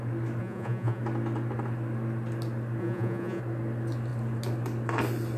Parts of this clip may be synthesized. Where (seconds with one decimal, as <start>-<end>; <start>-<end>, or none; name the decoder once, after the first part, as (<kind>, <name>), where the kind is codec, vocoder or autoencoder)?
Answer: 0.4-1.0 (vocoder, Vocos); 2.8-3.4